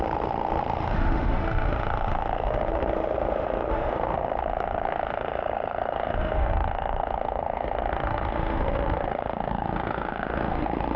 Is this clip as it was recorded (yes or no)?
no